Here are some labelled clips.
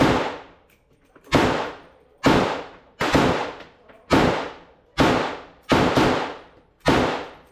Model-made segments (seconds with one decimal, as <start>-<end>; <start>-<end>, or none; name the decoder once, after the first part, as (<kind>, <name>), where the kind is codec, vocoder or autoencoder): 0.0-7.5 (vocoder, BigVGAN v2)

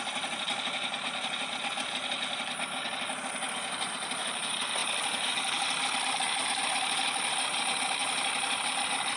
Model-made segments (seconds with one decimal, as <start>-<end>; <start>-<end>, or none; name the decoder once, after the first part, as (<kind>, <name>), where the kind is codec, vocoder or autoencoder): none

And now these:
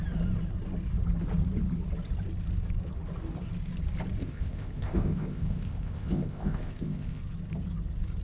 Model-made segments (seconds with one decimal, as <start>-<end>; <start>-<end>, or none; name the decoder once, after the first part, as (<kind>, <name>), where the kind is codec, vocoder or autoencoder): 4.2-7.2 (codec, ZipCodec)

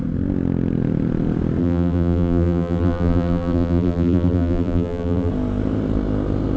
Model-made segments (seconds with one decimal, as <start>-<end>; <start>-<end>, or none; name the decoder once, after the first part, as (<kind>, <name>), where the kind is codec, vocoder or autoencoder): 1.6-5.3 (vocoder, BigVGAN v2)

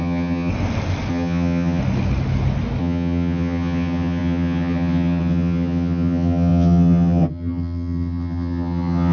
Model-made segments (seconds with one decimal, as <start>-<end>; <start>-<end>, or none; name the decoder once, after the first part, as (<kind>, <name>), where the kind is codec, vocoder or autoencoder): 0.0-0.5 (vocoder, HiFi-GAN); 1.1-1.8; 2.8-9.1

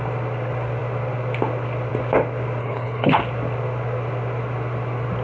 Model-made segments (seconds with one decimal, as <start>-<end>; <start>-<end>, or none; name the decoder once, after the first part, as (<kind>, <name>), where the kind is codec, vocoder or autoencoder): 2.6-3.2 (codec, HILCodec)

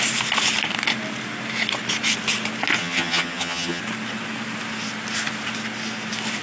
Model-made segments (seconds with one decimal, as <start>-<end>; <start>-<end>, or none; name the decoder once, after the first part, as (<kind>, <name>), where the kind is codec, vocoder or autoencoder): 2.8-3.8 (vocoder, HiFi-GAN)

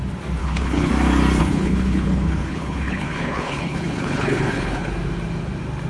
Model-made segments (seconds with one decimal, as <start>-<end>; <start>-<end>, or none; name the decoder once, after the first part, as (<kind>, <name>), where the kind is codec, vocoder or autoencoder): 0.4-0.9 (codec, HILCodec); 1.4-4.9